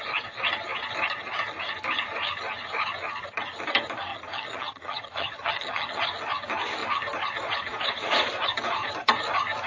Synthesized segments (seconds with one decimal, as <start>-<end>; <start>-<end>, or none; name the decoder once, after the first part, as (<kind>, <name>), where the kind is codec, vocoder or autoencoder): 4.1-6.0 (vocoder, HiFi-GAN)